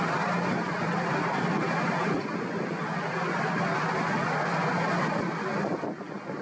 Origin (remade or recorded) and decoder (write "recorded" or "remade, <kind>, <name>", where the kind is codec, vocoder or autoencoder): recorded